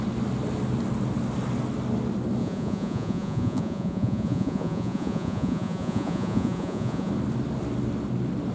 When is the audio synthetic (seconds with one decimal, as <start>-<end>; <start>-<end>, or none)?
2.4-7.1